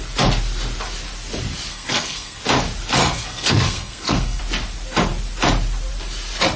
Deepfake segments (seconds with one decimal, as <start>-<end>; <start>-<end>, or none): 1.7-2.4; 3.0-4.4

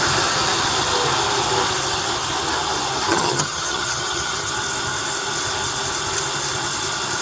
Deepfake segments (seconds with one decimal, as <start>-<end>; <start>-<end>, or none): 3.1-4.5

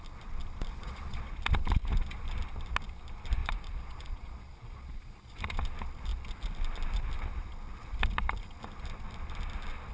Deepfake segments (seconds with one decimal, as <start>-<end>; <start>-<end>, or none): 0.7-1.2; 3.4-5.4